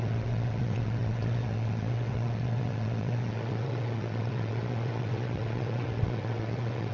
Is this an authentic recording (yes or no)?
no